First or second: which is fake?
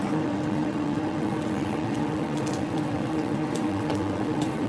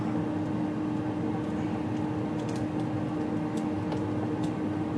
first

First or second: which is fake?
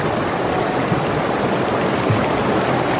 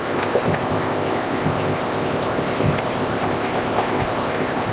second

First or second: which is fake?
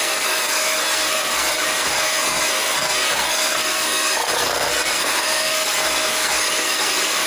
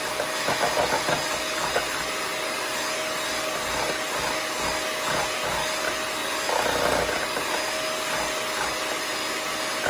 first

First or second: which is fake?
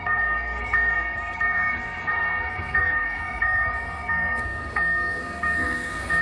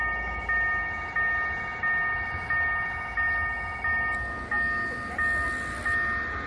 first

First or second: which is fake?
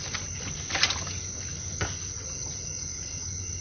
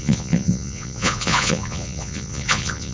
second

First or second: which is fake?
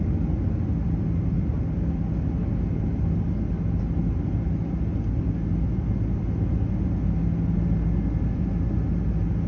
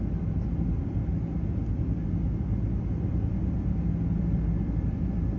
second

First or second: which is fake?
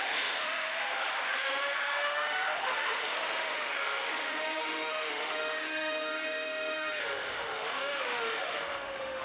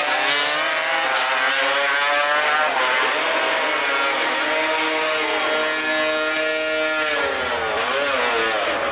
first